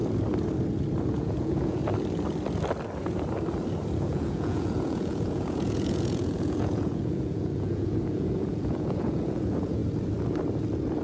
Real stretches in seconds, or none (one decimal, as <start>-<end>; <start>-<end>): 0.0-1.1; 1.8-4.0; 9.8-11.0